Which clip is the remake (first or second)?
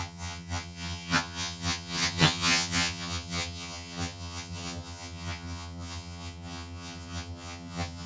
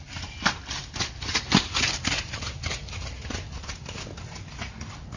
first